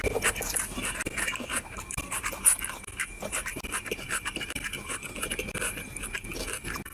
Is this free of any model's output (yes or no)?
yes